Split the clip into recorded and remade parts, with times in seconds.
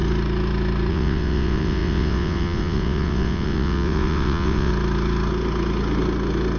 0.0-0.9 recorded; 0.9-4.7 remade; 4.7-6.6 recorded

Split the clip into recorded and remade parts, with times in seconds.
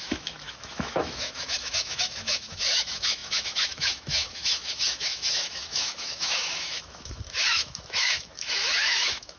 0.0-9.4 remade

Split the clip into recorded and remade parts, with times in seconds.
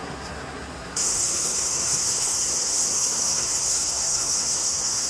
0.0-5.1 remade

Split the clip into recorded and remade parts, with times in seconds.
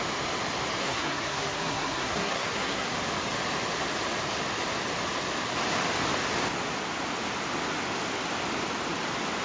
0.0-0.8 recorded; 0.8-2.9 remade; 2.9-9.4 recorded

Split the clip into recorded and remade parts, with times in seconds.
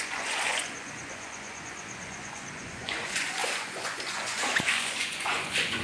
0.0-5.8 remade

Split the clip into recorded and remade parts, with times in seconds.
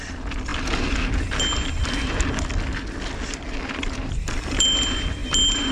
0.0-0.5 remade; 0.5-3.7 recorded; 3.7-5.2 remade; 5.2-5.7 recorded